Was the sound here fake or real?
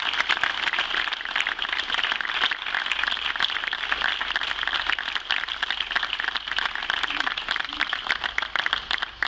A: real